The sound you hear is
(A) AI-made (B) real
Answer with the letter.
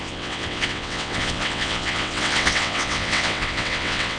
A